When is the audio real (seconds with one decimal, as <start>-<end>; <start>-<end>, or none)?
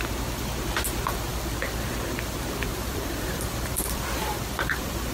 0.0-2.7